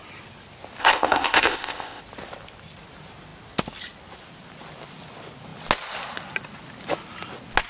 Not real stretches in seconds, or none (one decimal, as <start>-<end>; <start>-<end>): 0.8-2.0